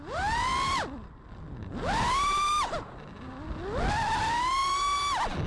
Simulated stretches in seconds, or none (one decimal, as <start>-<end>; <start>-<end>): none